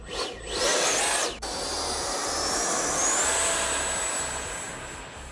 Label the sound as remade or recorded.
recorded